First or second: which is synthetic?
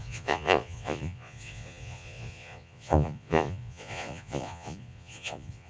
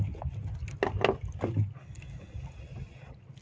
first